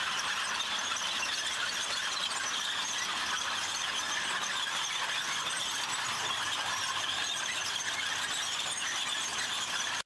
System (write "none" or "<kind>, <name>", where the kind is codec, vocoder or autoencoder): none